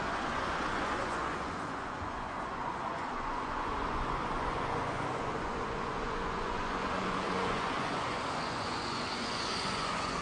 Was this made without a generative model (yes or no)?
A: no